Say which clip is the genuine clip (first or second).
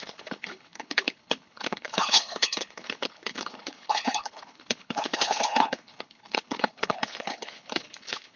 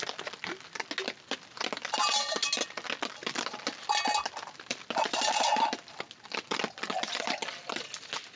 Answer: second